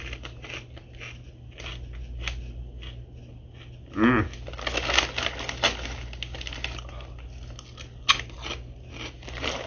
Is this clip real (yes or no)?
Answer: yes